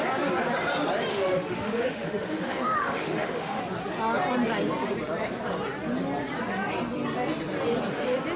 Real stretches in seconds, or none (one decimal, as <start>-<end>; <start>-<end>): 0.0-1.1; 3.6-8.4